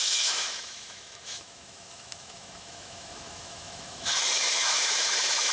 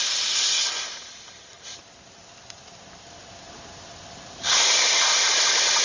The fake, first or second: first